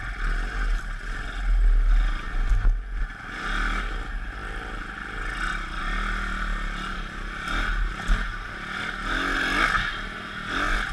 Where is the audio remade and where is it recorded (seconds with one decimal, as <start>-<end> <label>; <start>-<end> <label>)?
0.0-10.9 recorded